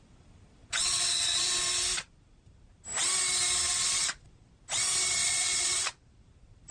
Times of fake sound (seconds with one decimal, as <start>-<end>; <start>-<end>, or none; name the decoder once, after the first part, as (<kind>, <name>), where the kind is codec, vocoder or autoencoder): 0.8-1.5 (vocoder, Vocos); 3.8-4.5; 5.2-6.3